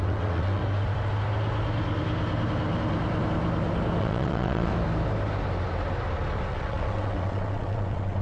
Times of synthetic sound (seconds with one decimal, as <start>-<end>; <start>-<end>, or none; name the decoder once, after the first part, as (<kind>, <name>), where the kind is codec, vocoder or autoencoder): 0.0-0.6 (vocoder, WaveNeXt); 4.0-4.7; 6.5-8.2